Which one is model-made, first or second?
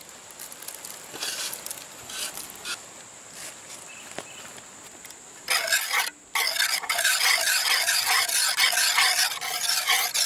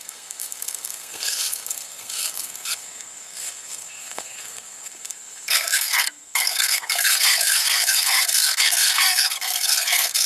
second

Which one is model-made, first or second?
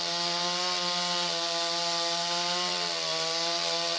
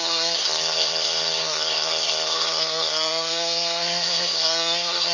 second